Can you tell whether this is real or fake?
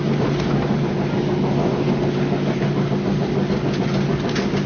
real